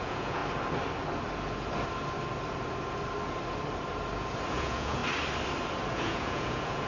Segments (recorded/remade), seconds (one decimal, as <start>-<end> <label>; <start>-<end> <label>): 0.0-0.4 remade; 0.4-4.5 recorded; 4.5-5.0 remade; 5.0-5.9 recorded; 5.9-6.9 remade